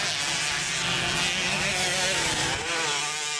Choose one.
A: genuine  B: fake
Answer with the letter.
A